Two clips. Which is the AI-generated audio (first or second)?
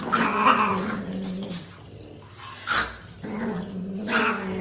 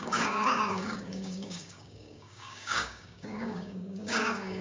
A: second